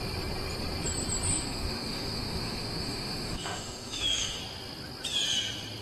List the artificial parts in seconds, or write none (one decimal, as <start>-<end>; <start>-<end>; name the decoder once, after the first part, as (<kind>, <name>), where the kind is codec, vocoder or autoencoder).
1.3-4.4 (autoencoder, DAC-VAE)